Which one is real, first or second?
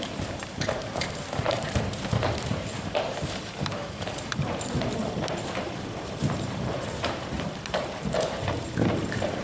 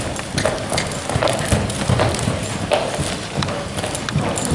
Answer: second